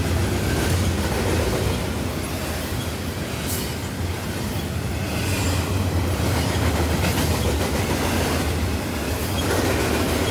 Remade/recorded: recorded